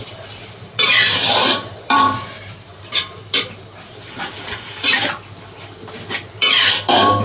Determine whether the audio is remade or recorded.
remade